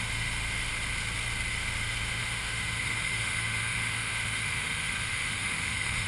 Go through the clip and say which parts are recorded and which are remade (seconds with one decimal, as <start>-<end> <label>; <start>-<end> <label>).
0.0-0.7 remade; 0.7-1.5 recorded; 1.5-6.1 remade